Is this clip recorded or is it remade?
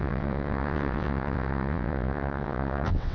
remade